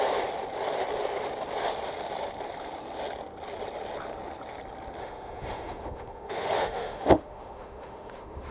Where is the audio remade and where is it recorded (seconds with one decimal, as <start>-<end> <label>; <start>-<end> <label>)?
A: 0.0-5.0 recorded; 5.0-8.5 remade